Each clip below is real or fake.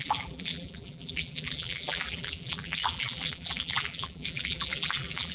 fake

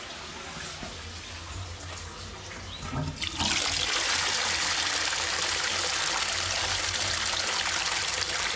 real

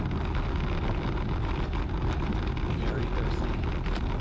real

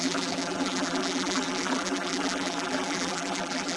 fake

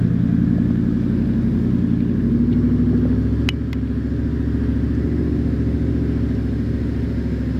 real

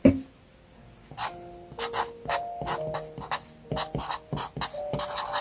real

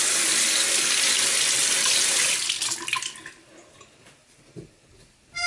fake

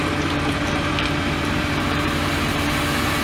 fake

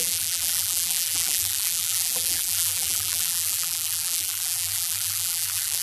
fake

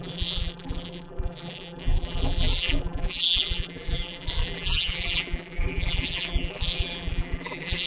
fake